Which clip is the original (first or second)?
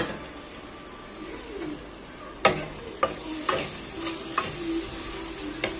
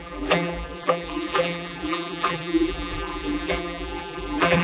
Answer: first